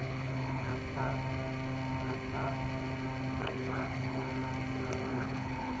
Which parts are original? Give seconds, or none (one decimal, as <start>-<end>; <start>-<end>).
0.7-3.4; 4.3-5.1